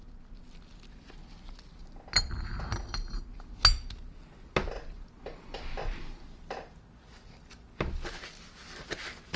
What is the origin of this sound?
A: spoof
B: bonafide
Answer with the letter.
B